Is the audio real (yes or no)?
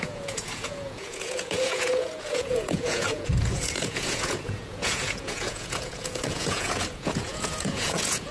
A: no